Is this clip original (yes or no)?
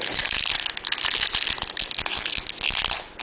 yes